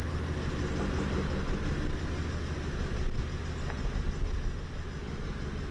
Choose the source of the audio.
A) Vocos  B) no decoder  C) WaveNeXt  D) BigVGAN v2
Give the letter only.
B